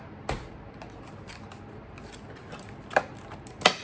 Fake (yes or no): no